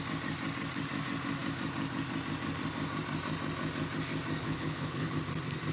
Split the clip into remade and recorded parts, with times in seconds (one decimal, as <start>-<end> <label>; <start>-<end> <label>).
0.0-4.4 recorded; 4.4-5.1 remade; 5.1-5.7 recorded